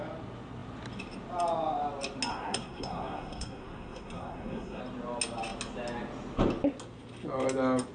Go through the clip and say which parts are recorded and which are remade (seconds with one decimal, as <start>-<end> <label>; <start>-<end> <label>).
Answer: 0.0-2.3 recorded; 2.3-4.8 remade; 4.8-7.9 recorded